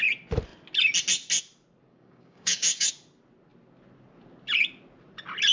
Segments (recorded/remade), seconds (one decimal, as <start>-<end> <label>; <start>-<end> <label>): 0.0-1.9 recorded; 1.9-2.9 remade; 2.9-5.5 recorded